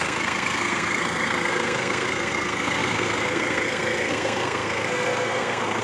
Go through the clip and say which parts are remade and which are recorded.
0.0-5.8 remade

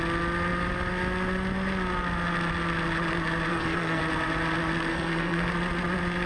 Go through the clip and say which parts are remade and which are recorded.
0.0-3.5 recorded; 3.5-4.0 remade; 4.0-4.9 recorded; 4.9-5.5 remade; 5.5-6.3 recorded